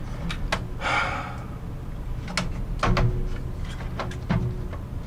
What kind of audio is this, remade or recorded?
recorded